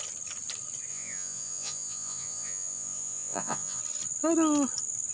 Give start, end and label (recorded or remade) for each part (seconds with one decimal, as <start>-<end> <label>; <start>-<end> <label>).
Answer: 0.0-0.9 recorded; 0.9-3.8 remade; 3.8-5.1 recorded